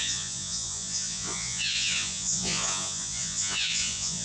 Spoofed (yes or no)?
yes